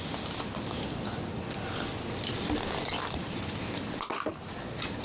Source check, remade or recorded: recorded